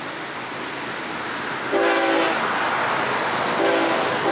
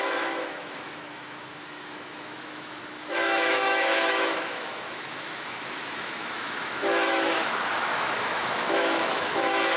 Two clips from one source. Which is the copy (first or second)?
second